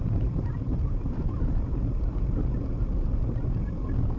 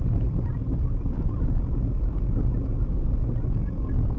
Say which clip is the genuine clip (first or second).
second